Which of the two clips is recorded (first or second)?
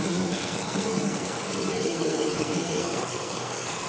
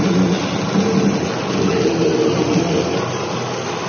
second